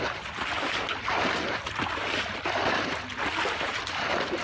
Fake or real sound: real